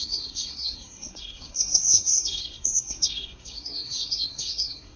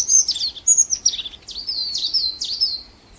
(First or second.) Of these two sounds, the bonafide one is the second